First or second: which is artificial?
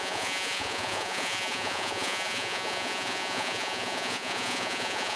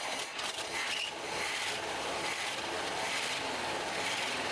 first